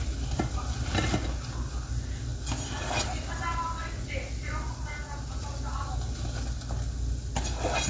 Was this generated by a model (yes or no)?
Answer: no